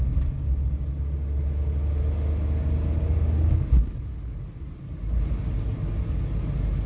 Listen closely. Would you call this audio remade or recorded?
recorded